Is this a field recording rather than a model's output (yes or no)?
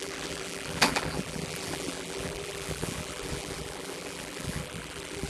no